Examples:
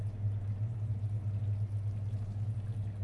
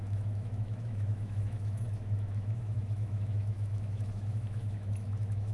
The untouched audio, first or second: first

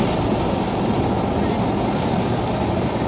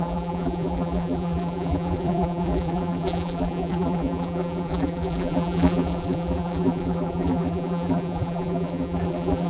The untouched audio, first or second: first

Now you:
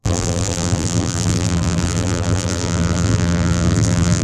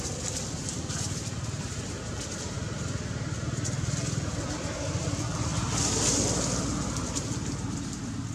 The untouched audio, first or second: second